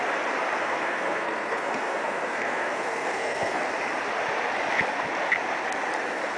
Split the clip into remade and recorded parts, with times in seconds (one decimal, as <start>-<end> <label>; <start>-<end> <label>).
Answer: 0.0-0.6 recorded; 0.6-3.6 remade; 3.6-6.4 recorded